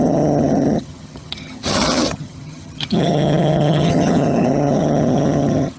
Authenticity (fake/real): fake